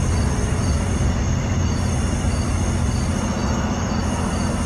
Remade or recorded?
recorded